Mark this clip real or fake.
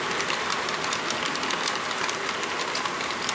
real